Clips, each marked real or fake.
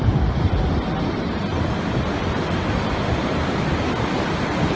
fake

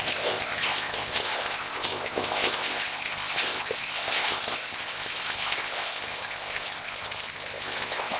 fake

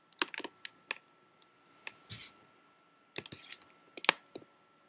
real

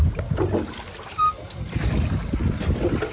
real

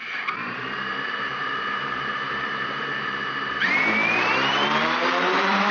fake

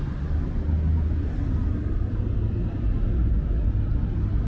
real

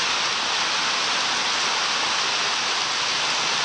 real